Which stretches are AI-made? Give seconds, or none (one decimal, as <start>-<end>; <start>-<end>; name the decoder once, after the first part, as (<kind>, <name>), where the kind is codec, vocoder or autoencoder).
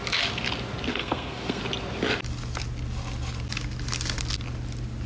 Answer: 0.9-1.6 (codec, SNAC)